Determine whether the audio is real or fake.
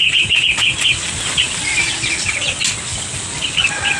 real